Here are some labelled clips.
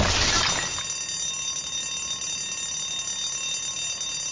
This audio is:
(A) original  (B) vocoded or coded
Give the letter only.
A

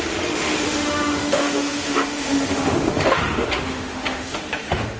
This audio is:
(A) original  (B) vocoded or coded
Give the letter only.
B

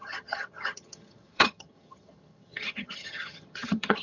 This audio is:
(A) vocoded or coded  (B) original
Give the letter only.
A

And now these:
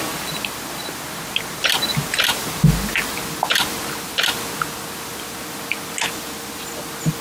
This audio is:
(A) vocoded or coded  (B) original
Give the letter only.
B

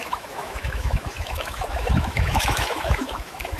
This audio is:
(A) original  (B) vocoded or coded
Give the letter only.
B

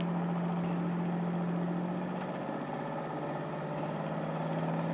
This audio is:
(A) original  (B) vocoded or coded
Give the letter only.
A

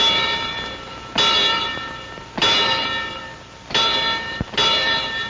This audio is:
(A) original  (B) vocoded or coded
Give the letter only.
A